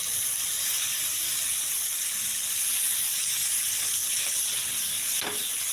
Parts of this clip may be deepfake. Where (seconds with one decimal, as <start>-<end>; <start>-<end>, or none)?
0.0-1.0